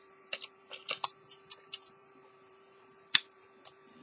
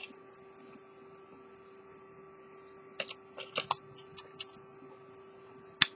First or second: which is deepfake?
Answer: first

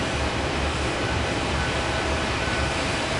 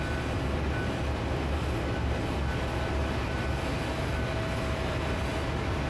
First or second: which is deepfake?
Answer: first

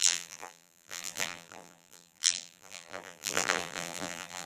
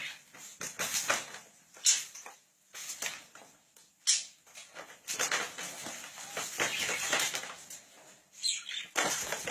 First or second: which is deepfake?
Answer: first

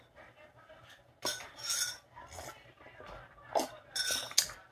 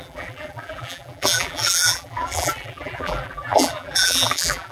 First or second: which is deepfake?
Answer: second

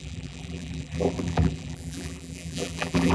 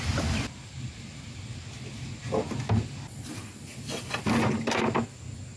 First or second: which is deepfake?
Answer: first